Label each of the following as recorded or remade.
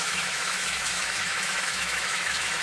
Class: remade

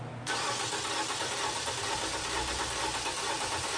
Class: recorded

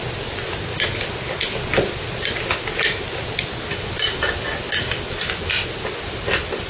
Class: recorded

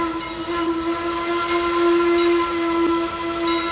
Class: recorded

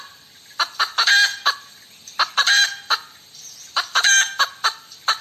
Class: remade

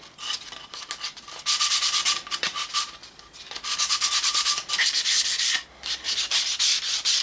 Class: recorded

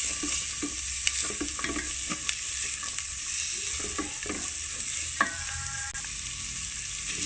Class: recorded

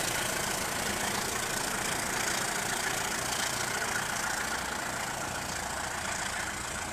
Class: recorded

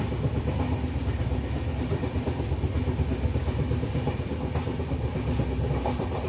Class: recorded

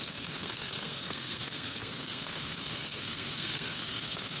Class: remade